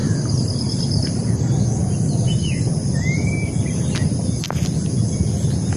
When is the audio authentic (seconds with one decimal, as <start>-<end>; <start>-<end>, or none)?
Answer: 1.2-1.8; 4.6-5.8